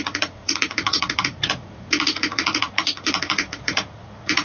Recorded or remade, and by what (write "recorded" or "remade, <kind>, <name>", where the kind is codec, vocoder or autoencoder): remade, vocoder, Vocos